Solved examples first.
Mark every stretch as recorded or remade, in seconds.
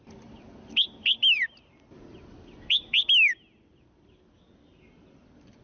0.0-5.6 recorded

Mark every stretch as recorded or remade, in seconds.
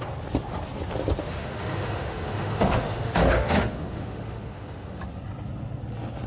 0.0-1.2 recorded; 1.2-5.0 remade; 5.0-6.3 recorded